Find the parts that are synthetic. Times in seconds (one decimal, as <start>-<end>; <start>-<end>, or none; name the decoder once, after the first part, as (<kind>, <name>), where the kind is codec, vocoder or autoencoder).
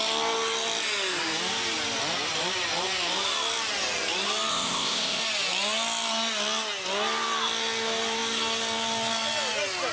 4.5-5.2 (codec, ZipCodec)